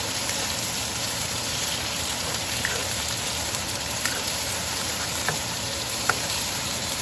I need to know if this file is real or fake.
fake